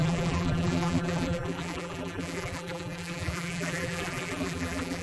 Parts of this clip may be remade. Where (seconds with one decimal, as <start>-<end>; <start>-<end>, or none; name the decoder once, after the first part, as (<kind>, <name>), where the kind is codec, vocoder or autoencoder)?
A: 0.0-5.0 (vocoder, BigVGAN v2)